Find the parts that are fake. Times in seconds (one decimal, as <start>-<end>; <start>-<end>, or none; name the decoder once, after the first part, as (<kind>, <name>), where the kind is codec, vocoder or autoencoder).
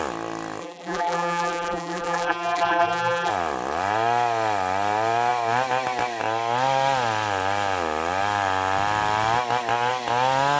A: 0.6-3.3 (vocoder, BigVGAN v2)